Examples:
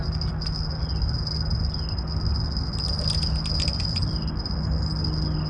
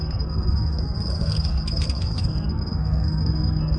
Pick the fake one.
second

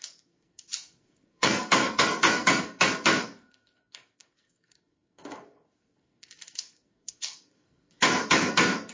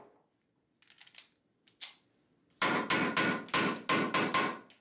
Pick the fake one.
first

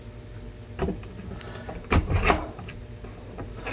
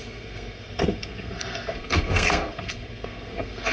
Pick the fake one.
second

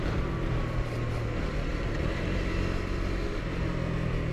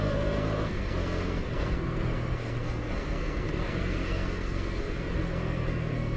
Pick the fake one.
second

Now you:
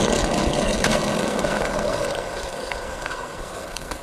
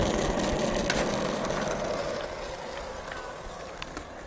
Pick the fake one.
first